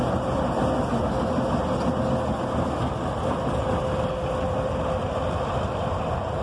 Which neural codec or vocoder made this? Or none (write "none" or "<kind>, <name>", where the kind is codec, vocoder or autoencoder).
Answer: none